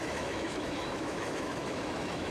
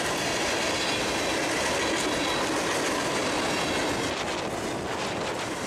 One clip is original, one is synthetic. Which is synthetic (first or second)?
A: first